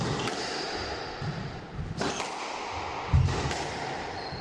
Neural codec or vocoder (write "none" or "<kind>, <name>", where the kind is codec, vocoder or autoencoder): none